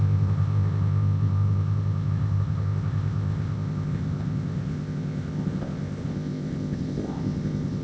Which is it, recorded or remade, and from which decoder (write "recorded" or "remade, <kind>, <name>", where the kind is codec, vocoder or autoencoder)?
remade, codec, ZipCodec